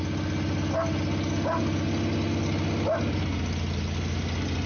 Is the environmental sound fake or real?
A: real